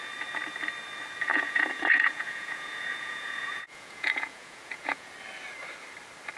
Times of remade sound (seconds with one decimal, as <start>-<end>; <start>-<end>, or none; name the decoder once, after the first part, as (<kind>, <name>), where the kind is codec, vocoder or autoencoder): 1.3-5.1 (vocoder, Vocos)